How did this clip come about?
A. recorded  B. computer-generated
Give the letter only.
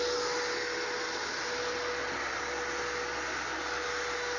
A